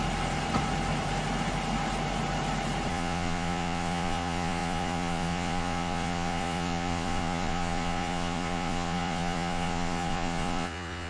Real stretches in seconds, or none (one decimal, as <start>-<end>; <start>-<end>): 0.0-2.9

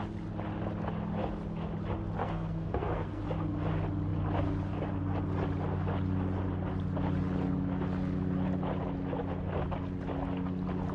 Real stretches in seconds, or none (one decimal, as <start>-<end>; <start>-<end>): 0.0-2.2; 3.2-10.9

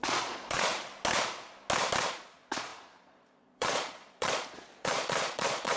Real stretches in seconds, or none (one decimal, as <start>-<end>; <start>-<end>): 0.7-2.1

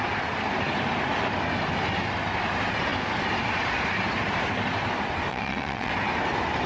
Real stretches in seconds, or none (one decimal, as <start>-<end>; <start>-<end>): 0.0-5.3; 5.9-6.7

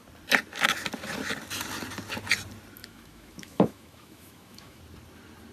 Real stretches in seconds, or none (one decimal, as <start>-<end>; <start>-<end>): 0.0-2.8; 4.8-5.5

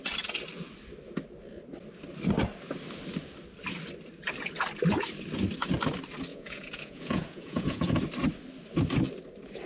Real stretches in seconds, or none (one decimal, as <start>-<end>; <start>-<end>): 0.0-6.3; 7.9-9.7

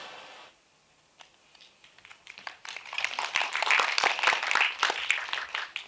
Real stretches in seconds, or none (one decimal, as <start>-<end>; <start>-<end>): 0.5-2.1; 3.5-5.9